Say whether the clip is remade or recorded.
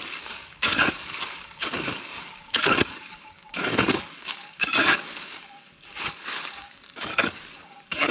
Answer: remade